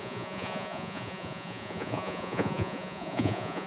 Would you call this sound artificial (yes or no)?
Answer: yes